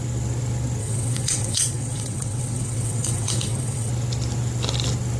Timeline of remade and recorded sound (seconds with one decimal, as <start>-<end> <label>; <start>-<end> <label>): 0.0-0.8 recorded; 0.8-3.9 remade; 3.9-5.2 recorded